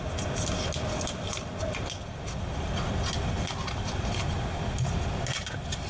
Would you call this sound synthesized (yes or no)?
no